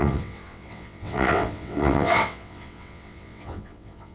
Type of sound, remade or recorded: remade